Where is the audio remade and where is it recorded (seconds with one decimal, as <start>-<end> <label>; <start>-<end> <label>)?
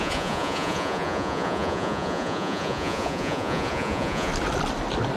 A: 0.0-4.3 remade; 4.3-5.2 recorded